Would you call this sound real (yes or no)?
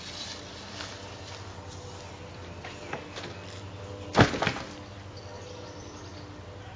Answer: yes